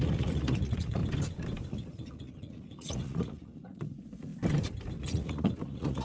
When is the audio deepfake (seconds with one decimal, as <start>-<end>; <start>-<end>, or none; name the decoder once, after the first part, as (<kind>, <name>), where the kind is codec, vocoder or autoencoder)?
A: 0.0-1.0 (vocoder, Vocos); 1.7-4.3; 5.0-6.0